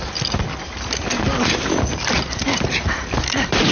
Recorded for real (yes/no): yes